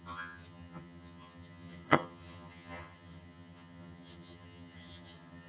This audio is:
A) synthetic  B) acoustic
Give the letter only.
A